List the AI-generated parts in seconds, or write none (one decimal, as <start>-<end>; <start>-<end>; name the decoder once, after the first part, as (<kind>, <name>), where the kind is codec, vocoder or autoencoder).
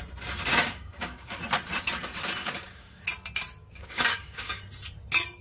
0.5-1.4 (codec, DAC); 2.4-3.0; 3.6-4.6